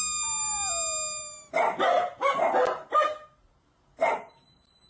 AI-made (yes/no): no